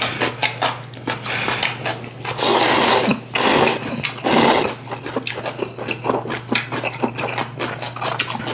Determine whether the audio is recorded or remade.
recorded